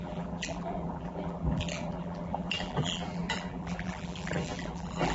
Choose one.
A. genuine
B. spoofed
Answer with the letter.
B